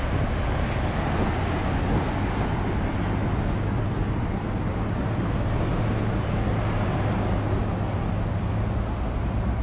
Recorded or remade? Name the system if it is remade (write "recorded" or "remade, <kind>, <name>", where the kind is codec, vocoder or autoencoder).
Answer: recorded